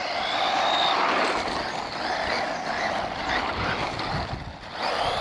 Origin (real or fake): real